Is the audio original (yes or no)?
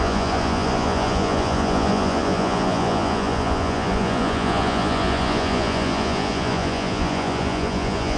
no